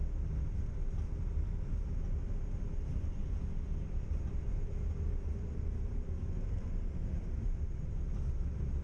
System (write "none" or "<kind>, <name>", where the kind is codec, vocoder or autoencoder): none